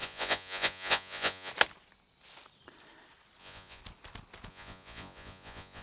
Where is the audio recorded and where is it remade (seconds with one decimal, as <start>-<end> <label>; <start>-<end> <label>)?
0.0-1.5 remade; 1.5-3.4 recorded; 3.4-3.8 remade; 3.8-4.5 recorded; 4.5-5.8 remade